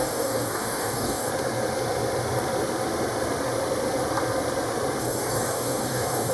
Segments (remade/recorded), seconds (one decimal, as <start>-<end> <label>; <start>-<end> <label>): 0.0-1.3 remade; 1.3-5.0 recorded; 5.0-6.3 remade